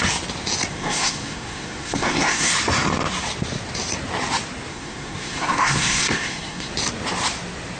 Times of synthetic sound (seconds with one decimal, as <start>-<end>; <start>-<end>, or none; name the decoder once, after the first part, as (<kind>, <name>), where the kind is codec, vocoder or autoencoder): 0.7-2.5 (codec, SNAC); 4.7-6.7